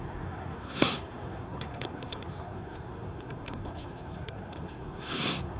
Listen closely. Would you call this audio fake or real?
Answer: fake